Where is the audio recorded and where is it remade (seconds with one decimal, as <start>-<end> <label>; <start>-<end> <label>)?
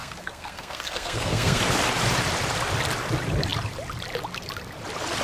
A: 0.0-1.6 remade; 1.6-5.2 recorded